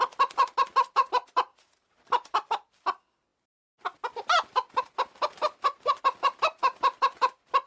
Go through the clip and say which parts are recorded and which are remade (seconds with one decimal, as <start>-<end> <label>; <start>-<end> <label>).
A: 0.0-1.5 recorded; 1.5-2.5 remade; 2.5-7.7 recorded